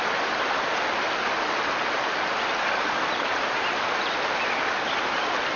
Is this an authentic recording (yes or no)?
yes